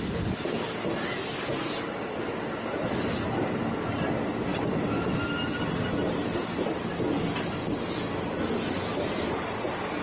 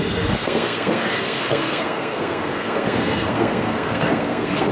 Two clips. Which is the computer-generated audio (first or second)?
second